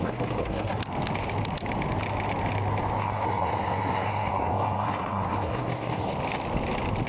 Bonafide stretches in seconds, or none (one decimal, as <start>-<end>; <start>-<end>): 0.8-3.0; 6.1-7.1